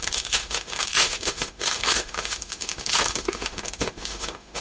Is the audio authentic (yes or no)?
no